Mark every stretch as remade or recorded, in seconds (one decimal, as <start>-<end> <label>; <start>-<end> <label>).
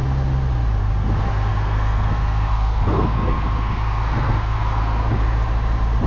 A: 0.0-1.5 recorded; 1.5-5.1 remade; 5.1-6.1 recorded